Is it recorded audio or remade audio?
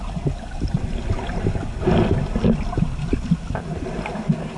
recorded